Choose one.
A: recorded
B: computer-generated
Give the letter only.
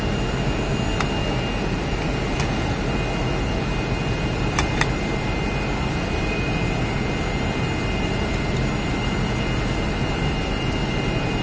A